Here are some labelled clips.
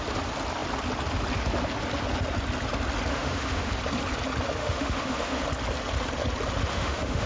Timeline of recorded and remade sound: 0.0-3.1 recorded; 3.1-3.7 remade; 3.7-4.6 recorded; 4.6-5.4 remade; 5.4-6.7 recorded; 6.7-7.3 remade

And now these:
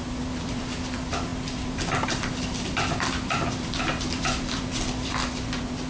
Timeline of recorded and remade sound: 0.0-5.9 remade

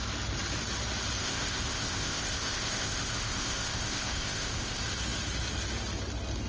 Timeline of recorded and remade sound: 0.0-1.2 recorded; 1.2-4.8 remade; 4.8-6.5 recorded